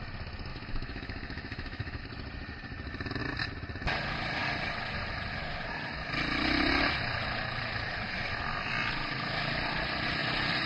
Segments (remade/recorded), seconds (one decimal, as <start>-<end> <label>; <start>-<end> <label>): 0.0-0.5 recorded; 0.5-2.0 remade; 2.0-10.7 recorded